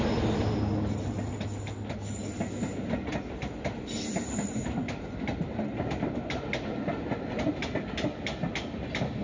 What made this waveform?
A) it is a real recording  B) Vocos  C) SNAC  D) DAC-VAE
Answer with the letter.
A